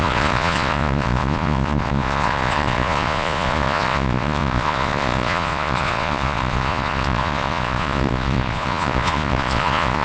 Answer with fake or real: fake